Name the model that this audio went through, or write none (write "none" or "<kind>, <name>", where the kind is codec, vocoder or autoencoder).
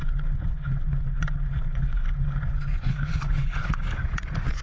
vocoder, Vocos